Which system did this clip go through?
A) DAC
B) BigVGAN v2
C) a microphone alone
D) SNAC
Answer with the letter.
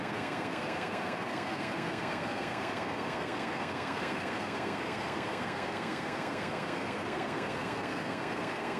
D